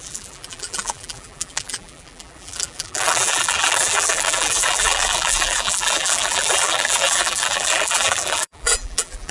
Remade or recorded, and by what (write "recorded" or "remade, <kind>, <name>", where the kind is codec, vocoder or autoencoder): remade, vocoder, BigVGAN v2